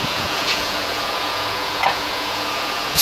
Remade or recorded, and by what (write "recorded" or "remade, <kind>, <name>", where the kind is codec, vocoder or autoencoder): remade, vocoder, Vocos